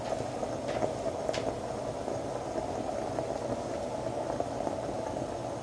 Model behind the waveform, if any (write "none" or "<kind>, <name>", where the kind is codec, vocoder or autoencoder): none